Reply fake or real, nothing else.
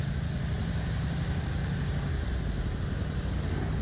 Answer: real